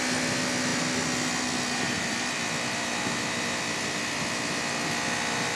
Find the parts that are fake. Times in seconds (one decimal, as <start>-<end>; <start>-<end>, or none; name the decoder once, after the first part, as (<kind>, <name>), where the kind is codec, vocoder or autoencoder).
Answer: none